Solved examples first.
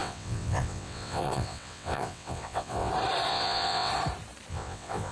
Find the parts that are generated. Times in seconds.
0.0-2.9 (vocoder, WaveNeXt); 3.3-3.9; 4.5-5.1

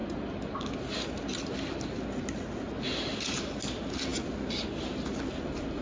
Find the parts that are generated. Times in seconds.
none